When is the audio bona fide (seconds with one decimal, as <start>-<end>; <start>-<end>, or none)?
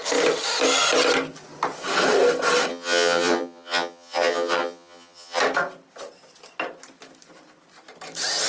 0.0-2.7; 5.4-8.5